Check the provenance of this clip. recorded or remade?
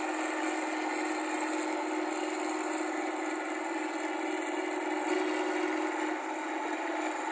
recorded